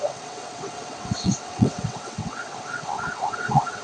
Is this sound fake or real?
fake